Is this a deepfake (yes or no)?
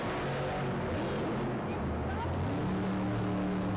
no